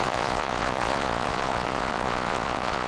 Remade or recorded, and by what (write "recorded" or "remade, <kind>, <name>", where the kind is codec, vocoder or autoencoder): remade, vocoder, Vocos